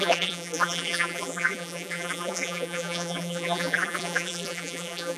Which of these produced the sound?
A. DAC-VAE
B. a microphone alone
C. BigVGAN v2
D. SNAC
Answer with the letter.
C